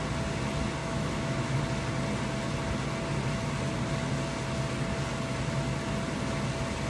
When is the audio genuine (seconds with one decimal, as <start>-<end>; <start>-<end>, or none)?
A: 0.0-0.8; 1.6-6.9